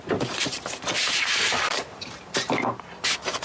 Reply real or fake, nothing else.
fake